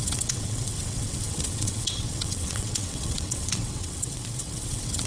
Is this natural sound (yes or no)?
no